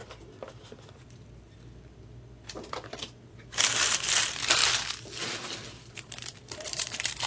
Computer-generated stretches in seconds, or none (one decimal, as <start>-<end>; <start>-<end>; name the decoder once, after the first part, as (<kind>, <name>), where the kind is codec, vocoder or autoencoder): 2.7-4.6 (vocoder, BigVGAN v2); 6.1-7.3